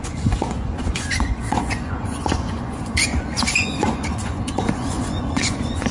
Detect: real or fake fake